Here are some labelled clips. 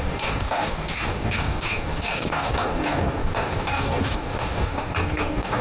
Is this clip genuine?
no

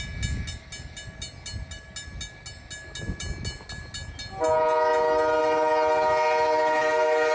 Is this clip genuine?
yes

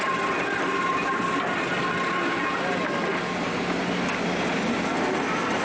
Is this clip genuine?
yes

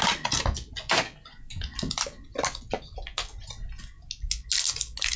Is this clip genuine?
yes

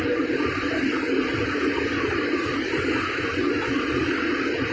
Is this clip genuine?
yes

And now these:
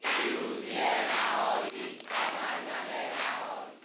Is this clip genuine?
no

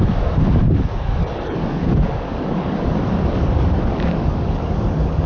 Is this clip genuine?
no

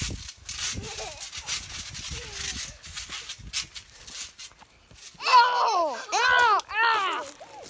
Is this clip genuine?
yes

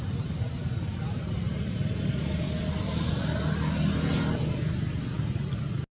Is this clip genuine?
yes